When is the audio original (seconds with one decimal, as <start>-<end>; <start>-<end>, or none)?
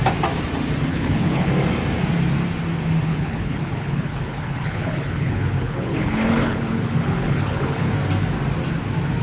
0.0-0.9; 1.5-3.1; 7.9-9.2